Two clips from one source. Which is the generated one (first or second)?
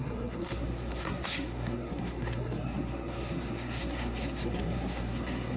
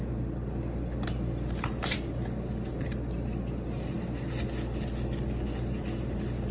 first